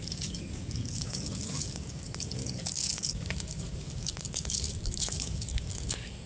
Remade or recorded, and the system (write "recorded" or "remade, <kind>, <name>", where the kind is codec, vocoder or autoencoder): remade, codec, DAC